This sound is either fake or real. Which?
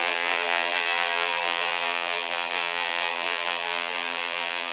fake